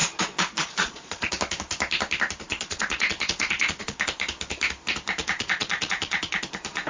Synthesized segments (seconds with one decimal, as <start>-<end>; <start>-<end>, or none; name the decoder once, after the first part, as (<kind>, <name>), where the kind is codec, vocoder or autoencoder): 0.0-1.3 (vocoder, Vocos); 2.5-4.0; 5.2-6.4